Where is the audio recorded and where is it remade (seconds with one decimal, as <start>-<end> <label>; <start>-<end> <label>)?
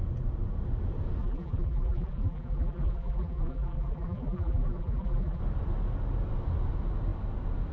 0.0-1.2 recorded; 1.2-5.4 remade; 5.4-7.7 recorded